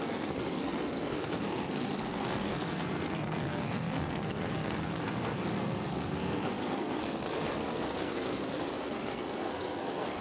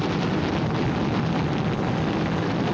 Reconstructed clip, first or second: first